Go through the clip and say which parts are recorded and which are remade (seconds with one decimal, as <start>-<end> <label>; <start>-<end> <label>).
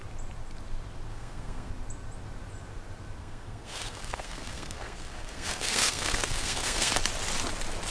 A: 0.0-1.1 recorded; 1.1-1.7 remade; 1.7-3.2 recorded; 3.2-6.9 remade; 6.9-7.9 recorded